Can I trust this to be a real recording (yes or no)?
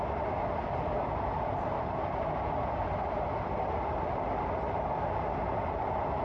yes